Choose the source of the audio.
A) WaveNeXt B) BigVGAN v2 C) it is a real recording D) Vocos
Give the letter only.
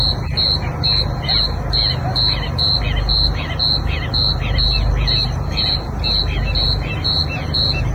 C